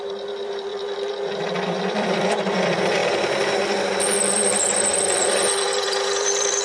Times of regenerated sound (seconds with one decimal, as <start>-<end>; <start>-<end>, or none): 0.0-3.0; 4.3-6.6